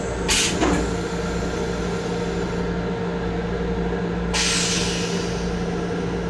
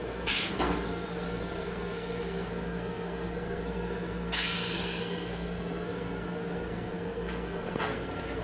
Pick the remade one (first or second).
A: second